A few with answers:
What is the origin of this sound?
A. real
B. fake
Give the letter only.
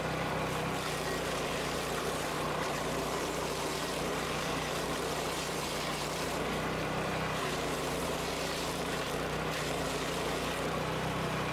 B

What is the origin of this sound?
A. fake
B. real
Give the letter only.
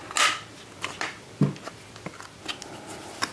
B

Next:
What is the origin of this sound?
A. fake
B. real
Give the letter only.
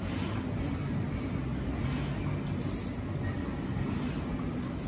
B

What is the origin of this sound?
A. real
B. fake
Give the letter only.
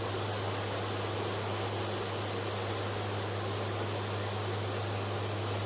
A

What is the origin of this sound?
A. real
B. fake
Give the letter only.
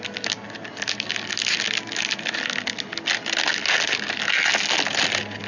A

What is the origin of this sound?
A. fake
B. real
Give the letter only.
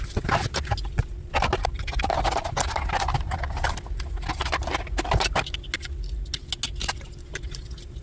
B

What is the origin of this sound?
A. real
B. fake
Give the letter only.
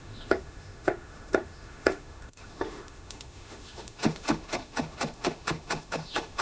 B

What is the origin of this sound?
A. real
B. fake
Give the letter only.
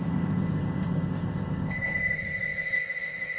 B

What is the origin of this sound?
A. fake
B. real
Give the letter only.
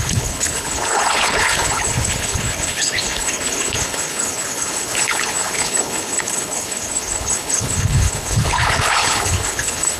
A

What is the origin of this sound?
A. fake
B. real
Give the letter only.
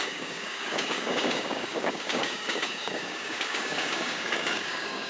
A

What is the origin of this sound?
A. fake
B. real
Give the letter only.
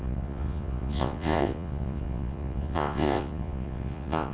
A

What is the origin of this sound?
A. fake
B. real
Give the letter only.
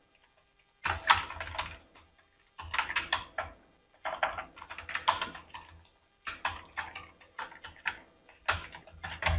B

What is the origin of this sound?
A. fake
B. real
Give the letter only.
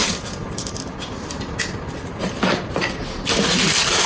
B